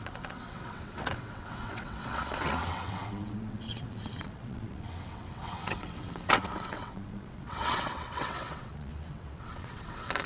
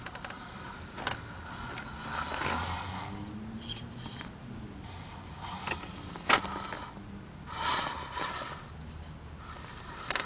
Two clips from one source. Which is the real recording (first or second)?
second